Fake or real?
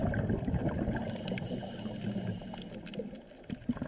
real